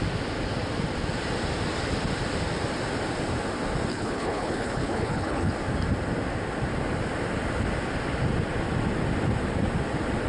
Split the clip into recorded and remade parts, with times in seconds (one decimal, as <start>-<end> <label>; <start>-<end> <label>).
0.0-3.9 recorded; 3.9-5.5 remade; 5.5-10.3 recorded